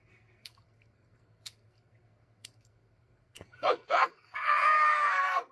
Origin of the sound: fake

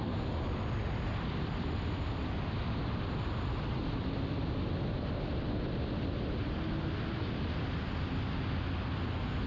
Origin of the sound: real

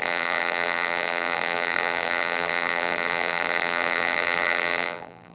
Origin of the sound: fake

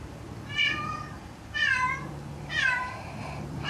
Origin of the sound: fake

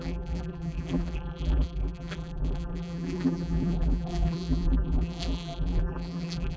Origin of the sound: fake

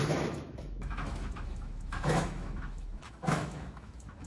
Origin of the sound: fake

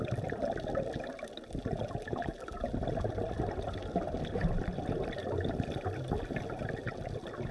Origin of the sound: real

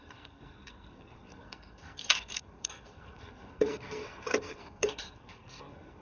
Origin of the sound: fake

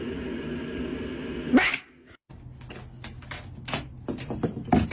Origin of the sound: real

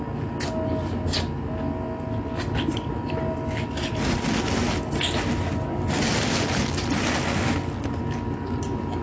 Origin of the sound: real